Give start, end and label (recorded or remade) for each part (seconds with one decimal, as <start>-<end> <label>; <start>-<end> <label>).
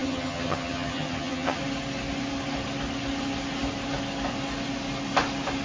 0.0-1.6 remade; 1.6-5.6 recorded